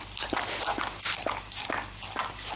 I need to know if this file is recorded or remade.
recorded